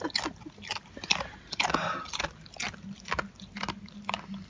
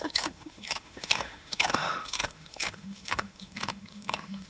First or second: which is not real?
second